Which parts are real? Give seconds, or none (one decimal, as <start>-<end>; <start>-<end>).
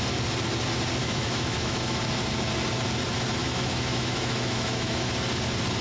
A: 0.0-1.0; 2.0-3.4; 5.1-5.8